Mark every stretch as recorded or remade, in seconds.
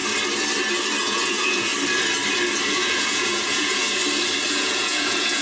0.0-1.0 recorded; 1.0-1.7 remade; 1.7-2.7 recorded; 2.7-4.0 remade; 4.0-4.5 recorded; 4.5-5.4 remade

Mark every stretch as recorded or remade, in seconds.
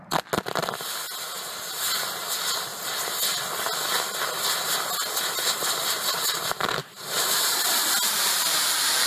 0.0-5.8 recorded; 5.8-9.1 remade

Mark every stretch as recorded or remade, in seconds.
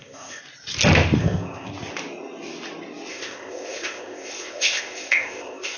0.0-0.4 remade; 0.4-1.2 recorded; 1.2-1.7 remade; 1.7-3.1 recorded; 3.1-5.8 remade